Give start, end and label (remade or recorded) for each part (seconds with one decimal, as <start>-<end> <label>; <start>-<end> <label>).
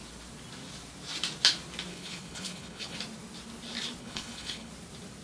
0.0-1.9 recorded; 1.9-3.0 remade; 3.0-4.0 recorded; 4.0-4.7 remade; 4.7-5.2 recorded